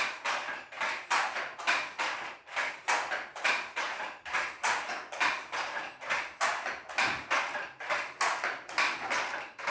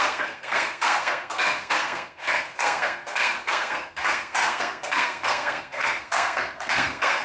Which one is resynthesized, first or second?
second